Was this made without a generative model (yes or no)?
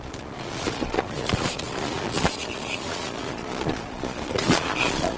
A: no